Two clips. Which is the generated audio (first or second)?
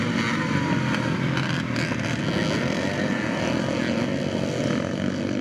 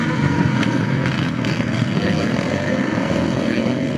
second